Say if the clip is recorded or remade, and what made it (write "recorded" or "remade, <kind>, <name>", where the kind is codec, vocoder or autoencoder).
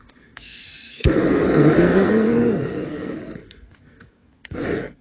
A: remade, codec, SNAC